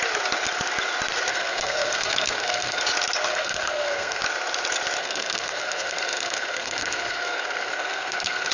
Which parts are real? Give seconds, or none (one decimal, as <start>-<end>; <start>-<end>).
0.0-1.3; 2.8-3.3; 4.2-5.0